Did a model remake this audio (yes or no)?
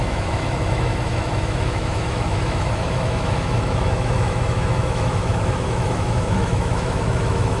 yes